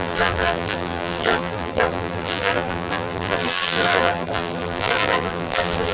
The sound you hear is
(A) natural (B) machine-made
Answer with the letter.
B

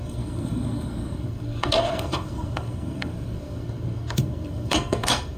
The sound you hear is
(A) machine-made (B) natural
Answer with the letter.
A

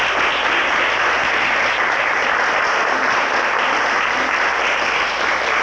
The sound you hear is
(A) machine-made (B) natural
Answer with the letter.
B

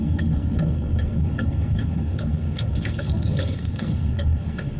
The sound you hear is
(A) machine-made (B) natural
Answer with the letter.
A